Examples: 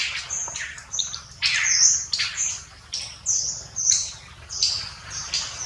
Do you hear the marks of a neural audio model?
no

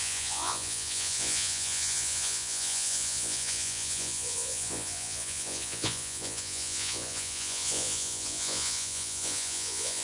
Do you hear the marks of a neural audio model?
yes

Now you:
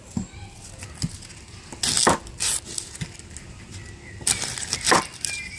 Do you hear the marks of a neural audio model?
no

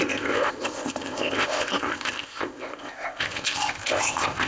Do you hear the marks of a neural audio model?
yes